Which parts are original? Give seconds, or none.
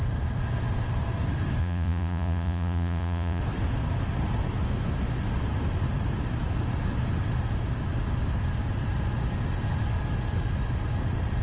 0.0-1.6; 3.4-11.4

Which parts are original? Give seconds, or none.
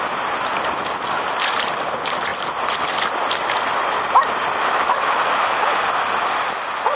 0.0-4.6; 5.8-7.0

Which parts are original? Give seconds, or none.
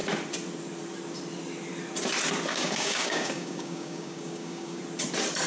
0.0-2.5; 4.8-5.5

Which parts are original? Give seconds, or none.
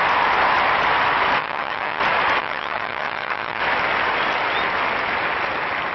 0.0-1.4; 2.0-2.4; 3.6-5.9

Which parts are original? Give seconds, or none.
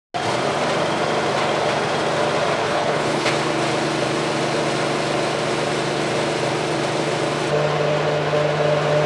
0.0-2.6; 3.3-9.1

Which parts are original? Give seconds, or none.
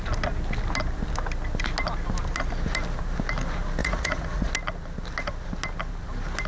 0.0-3.8; 4.5-6.5